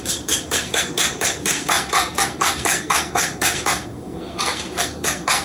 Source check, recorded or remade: remade